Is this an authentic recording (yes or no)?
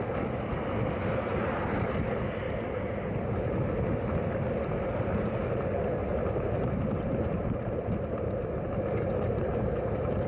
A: yes